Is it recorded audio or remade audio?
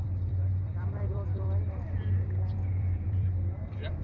remade